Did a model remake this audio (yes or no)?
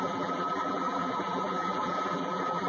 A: yes